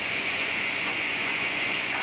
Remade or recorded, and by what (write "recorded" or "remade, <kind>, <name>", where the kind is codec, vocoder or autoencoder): remade, vocoder, Vocos